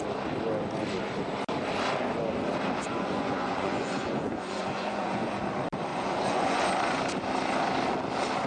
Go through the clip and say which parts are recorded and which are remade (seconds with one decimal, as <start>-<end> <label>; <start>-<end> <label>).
0.0-2.8 recorded; 2.8-5.4 remade; 5.4-5.9 recorded; 5.9-7.0 remade; 7.0-8.5 recorded